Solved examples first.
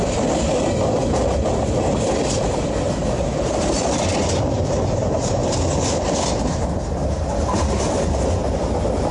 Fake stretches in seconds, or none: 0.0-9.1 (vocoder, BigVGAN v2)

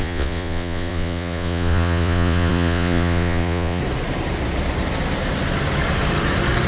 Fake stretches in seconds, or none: 0.0-3.8 (vocoder, Vocos)

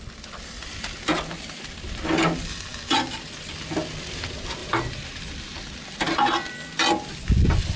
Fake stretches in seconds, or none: 4.6-5.2 (vocoder, BigVGAN v2)

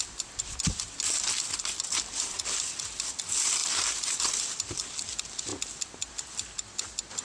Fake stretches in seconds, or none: none

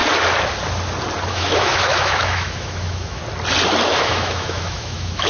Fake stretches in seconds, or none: 1.3-3.2 (autoencoder, DAC-VAE); 3.9-5.3

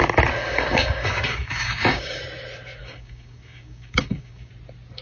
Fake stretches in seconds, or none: 0.4-2.2 (codec, DAC); 2.8-4.5

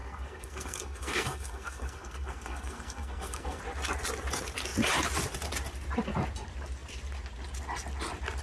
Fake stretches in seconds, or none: 0.0-3.6 (codec, SNAC)

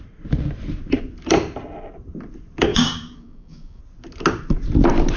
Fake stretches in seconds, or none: 2.7-3.8 (codec, DAC)